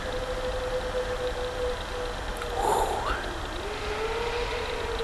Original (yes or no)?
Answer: yes